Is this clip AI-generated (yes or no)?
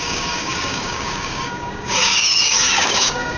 yes